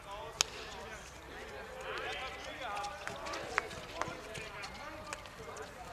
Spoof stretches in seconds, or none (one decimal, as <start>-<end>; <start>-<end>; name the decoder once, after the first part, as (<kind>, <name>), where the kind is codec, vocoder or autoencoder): none